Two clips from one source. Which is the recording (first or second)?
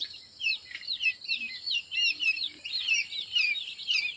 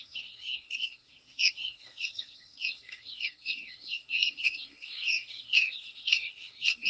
first